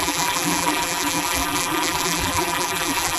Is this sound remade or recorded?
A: remade